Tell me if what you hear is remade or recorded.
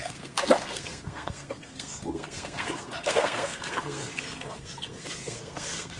remade